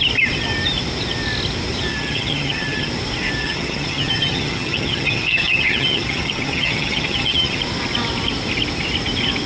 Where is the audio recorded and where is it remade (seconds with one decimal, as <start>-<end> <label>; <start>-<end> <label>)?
0.0-1.9 recorded; 1.9-2.9 remade; 2.9-3.4 recorded; 3.4-7.6 remade; 7.6-9.5 recorded